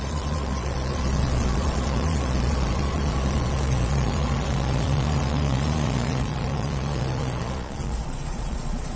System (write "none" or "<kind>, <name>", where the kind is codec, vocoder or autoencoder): vocoder, Vocos